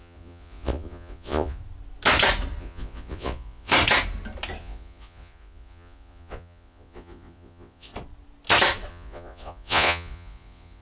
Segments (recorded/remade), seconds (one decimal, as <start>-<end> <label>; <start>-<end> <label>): 0.0-1.6 remade; 1.6-2.6 recorded; 2.6-3.7 remade; 3.7-4.6 recorded; 4.6-7.9 remade; 7.9-8.9 recorded; 8.9-10.8 remade